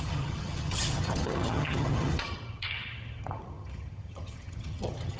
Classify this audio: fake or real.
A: fake